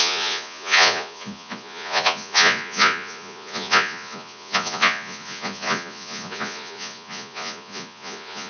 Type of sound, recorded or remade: remade